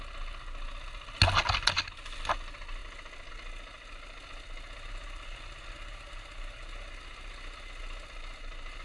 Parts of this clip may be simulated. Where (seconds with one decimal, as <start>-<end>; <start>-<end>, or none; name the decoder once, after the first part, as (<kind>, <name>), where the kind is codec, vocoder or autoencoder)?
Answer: none